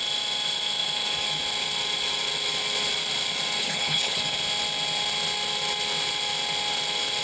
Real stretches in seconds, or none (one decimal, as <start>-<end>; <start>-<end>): 0.0-3.6; 4.2-7.2